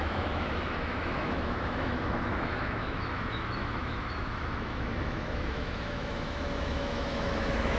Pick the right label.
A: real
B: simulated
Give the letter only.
B